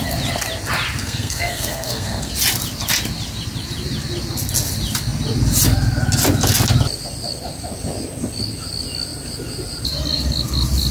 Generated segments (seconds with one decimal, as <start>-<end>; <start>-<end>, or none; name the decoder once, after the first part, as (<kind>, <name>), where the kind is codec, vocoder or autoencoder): 1.0-2.3 (codec, SNAC)